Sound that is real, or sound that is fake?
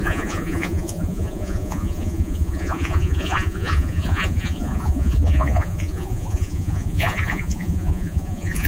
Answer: fake